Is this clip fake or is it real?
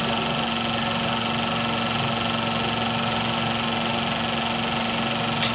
real